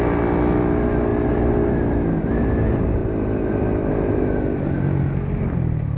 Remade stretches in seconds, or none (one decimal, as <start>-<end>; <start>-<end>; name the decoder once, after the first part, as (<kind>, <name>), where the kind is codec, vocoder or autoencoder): none

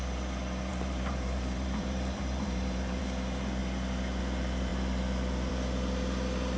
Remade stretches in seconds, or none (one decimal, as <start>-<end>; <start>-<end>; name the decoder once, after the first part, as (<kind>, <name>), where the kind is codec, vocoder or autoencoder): 0.7-3.0 (vocoder, BigVGAN v2)

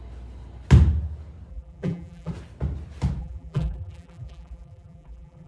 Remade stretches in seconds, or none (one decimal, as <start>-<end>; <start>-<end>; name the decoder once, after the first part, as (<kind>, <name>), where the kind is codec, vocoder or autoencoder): 1.5-2.3 (vocoder, BigVGAN v2); 3.2-5.5

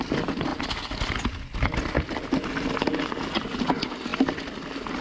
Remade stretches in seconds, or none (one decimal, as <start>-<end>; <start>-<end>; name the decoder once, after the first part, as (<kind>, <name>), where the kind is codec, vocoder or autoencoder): none

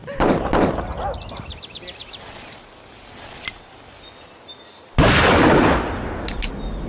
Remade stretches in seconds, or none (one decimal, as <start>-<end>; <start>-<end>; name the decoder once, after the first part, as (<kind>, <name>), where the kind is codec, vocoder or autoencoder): none